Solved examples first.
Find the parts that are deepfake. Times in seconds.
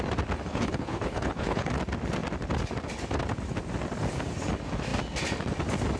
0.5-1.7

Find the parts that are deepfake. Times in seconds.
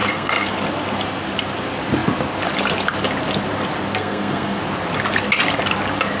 0.0-0.6; 3.9-4.6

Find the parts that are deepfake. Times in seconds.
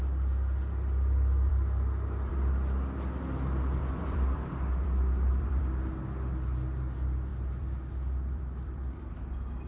3.8-5.6; 7.3-9.7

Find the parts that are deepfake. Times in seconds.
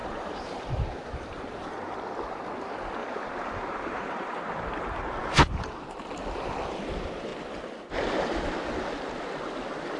0.0-1.9; 3.0-4.3; 5.2-5.7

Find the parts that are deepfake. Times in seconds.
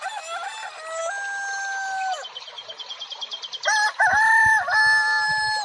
none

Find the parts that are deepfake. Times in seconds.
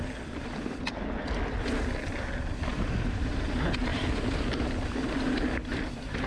2.7-3.3; 3.9-5.2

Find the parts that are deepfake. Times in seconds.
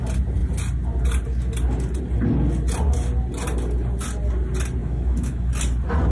4.8-5.5